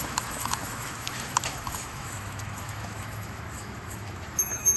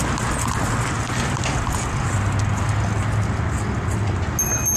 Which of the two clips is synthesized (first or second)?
first